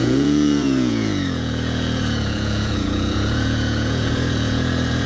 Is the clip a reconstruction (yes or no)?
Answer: yes